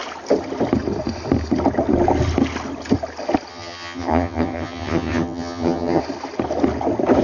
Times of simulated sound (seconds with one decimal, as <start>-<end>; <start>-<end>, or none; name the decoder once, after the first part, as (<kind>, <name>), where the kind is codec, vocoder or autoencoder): 3.5-6.0 (vocoder, HiFi-GAN)